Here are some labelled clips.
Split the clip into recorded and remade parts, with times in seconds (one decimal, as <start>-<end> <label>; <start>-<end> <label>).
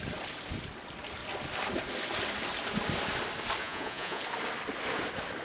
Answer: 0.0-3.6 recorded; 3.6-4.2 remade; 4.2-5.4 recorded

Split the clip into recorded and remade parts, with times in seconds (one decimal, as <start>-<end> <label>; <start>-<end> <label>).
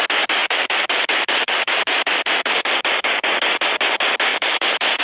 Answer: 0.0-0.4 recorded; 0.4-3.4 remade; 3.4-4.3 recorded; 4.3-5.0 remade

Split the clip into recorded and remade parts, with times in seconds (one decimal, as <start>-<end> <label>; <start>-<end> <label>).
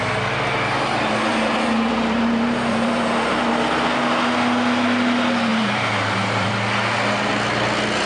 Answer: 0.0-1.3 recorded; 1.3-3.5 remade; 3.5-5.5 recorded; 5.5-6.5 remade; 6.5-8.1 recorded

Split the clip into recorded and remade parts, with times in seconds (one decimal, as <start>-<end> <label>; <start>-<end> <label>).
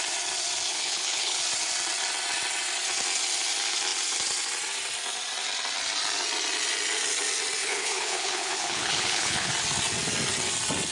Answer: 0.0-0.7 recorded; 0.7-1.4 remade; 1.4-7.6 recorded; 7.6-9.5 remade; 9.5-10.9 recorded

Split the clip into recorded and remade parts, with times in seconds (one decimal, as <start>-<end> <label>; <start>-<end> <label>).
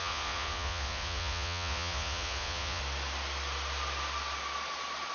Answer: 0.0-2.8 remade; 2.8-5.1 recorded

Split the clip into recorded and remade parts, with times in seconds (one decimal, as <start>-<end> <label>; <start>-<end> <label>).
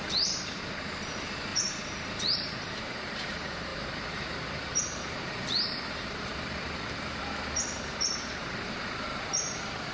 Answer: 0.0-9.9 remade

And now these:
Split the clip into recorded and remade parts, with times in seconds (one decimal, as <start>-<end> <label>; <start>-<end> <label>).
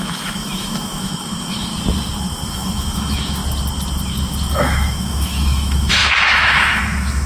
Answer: 0.0-1.7 remade; 1.7-2.5 recorded; 2.5-3.4 remade; 3.4-4.5 recorded; 4.5-7.3 remade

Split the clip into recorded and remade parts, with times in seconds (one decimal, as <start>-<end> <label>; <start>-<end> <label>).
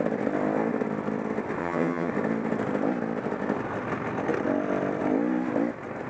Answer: 0.0-1.6 recorded; 1.6-2.1 remade; 2.1-6.1 recorded